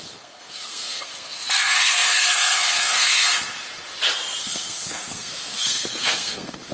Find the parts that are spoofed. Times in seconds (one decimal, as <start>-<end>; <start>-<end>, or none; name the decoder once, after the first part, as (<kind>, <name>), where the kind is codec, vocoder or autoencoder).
0.0-3.2 (codec, SNAC); 4.4-6.7